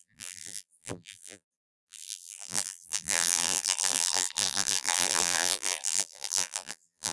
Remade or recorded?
remade